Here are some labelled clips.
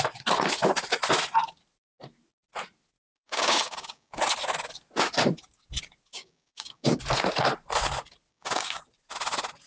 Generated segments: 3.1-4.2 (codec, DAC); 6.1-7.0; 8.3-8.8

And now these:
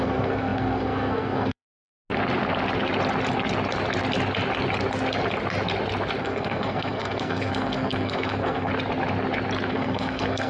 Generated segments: 0.0-1.9 (codec, SNAC); 6.2-8.7; 9.7-10.5

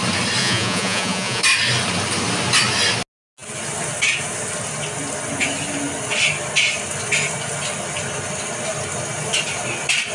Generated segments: 0.4-1.4 (vocoder, Vocos)

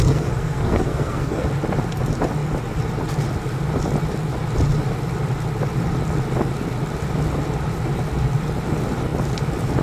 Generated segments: 0.0-1.5 (codec, SNAC)

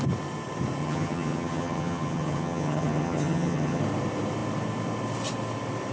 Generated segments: 0.8-3.8 (vocoder, HiFi-GAN)

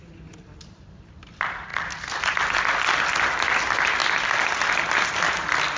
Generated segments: none

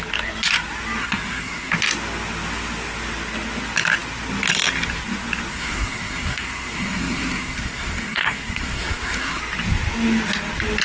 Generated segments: 1.0-1.7 (codec, SNAC); 5.5-9.4

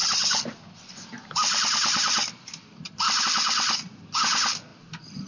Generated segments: none